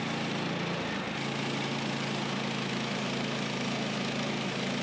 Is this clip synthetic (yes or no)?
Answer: no